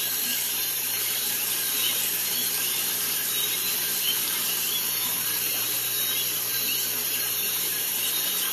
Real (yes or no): no